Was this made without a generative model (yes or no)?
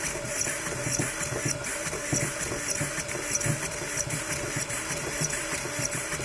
yes